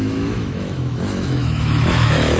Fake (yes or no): yes